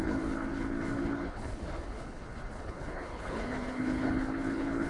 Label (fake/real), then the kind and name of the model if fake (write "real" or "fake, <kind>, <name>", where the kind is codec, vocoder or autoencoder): fake, codec, HILCodec